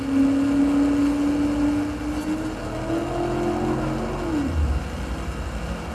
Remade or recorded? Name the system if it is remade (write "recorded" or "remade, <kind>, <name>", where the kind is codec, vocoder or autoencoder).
recorded